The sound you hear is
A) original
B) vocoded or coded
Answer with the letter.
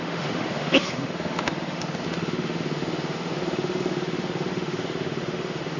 B